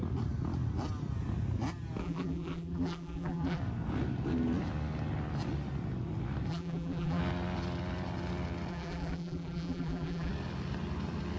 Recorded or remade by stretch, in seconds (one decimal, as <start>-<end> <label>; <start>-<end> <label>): 0.0-2.0 recorded; 2.0-3.6 remade; 3.6-6.5 recorded; 6.5-7.2 remade; 7.2-8.7 recorded; 8.7-10.3 remade; 10.3-11.4 recorded